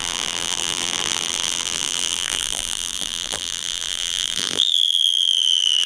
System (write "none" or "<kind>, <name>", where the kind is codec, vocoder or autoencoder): vocoder, BigVGAN v2